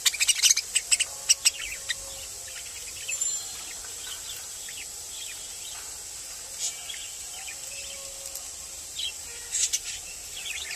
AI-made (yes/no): no